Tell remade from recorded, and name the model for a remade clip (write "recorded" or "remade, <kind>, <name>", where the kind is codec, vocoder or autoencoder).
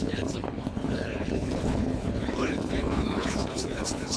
remade, codec, HILCodec